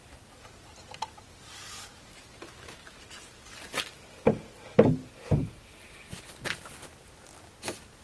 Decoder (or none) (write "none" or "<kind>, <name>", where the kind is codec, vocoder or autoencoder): none